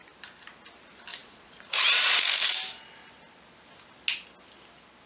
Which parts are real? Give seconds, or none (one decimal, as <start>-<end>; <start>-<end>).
0.0-1.2; 1.8-5.1